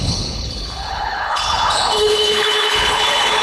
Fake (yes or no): yes